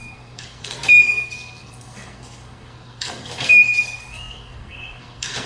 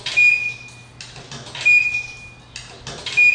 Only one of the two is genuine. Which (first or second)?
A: second